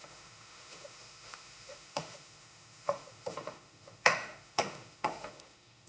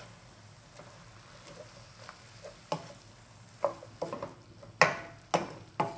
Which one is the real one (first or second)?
second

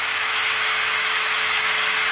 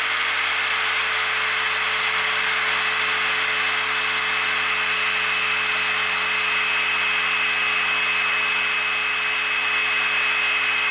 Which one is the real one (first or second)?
second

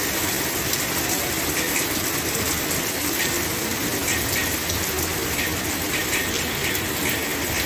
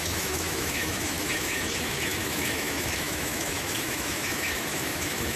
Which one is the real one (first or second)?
first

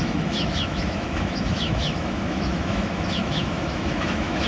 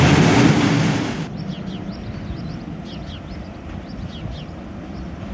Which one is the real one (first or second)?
second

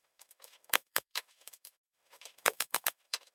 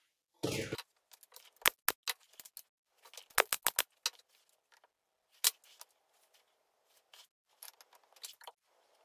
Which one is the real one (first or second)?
second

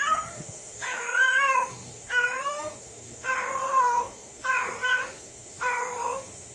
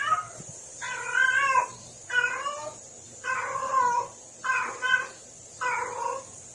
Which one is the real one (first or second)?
second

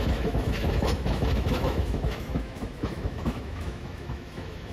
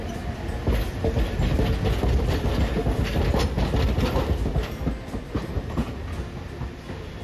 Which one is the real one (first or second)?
second